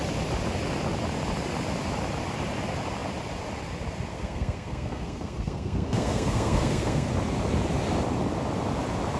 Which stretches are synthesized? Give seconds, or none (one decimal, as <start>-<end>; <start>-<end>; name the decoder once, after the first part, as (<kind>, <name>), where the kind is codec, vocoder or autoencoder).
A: 4.1-7.1 (codec, SNAC)